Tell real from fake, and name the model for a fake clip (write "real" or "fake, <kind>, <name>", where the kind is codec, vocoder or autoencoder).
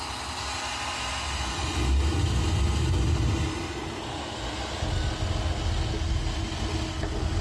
real